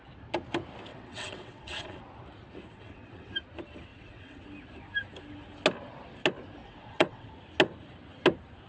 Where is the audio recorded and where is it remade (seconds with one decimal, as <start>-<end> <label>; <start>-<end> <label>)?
0.0-0.9 recorded; 0.9-2.0 remade; 2.0-2.7 recorded; 2.7-3.3 remade; 3.3-3.9 recorded; 3.9-4.4 remade; 4.4-6.6 recorded; 6.6-7.3 remade; 7.3-8.7 recorded